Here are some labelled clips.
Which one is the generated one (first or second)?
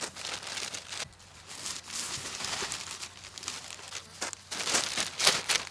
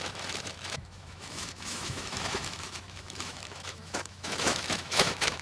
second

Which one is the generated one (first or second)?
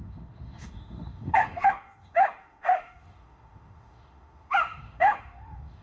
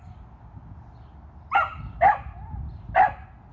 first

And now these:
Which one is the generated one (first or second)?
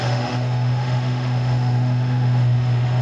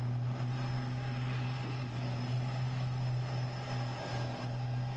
first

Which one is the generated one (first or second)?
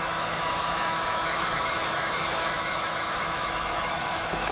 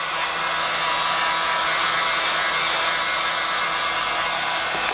first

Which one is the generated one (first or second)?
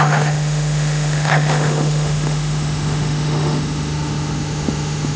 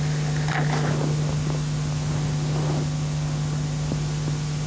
first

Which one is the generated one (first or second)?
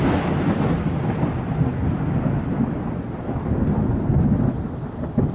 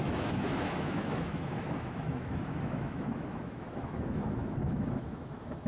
second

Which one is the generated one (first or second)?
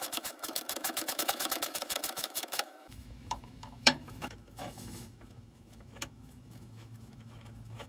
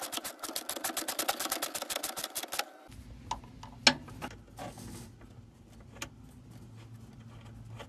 first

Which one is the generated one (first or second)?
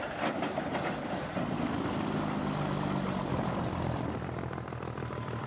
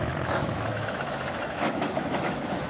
second